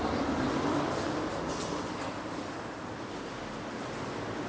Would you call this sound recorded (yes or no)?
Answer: yes